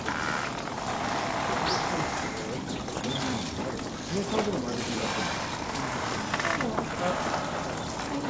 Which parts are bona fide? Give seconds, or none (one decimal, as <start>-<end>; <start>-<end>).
0.0-8.3